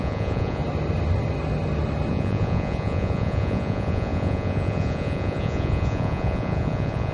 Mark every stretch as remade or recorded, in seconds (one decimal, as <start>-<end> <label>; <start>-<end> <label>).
0.0-0.6 remade; 0.6-2.1 recorded; 2.1-7.1 remade